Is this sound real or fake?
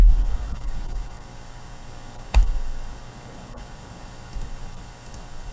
fake